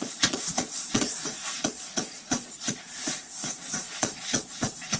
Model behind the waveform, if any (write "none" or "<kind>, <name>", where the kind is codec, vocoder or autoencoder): vocoder, Vocos